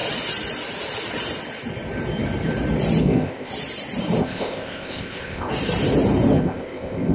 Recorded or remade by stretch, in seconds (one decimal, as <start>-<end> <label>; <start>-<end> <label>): 0.0-3.0 recorded; 3.0-3.5 remade; 3.5-4.2 recorded; 4.2-5.5 remade; 5.5-6.4 recorded; 6.4-7.1 remade